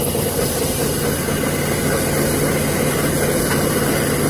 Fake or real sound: real